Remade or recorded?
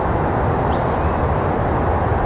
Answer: recorded